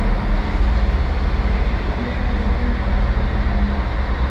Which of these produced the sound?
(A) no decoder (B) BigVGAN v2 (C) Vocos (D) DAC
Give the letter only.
A